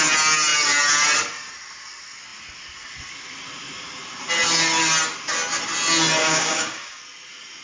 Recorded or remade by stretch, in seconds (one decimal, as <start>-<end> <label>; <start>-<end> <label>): 0.0-6.2 recorded; 6.2-7.0 remade; 7.0-7.6 recorded